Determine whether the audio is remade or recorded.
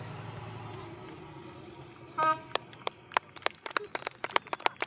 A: remade